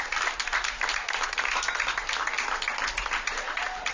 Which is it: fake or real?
real